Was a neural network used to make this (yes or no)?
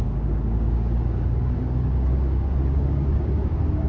yes